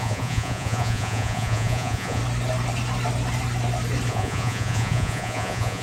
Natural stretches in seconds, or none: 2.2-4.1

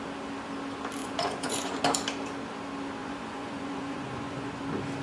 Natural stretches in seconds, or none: 0.0-1.0; 1.8-3.0; 4.6-5.0

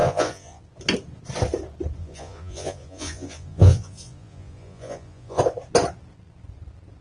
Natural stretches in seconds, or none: 0.6-2.0; 5.4-7.0

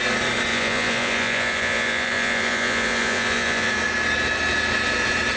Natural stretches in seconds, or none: 0.0-0.5; 3.7-5.4

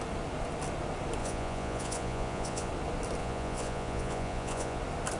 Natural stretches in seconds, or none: 0.0-1.2; 2.7-3.2; 4.8-5.2